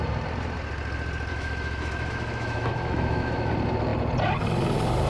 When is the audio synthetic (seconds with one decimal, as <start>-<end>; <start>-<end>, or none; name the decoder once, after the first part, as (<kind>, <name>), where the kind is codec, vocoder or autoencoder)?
1.3-3.5 (autoencoder, DAC-VAE)